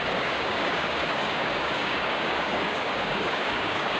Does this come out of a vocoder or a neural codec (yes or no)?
yes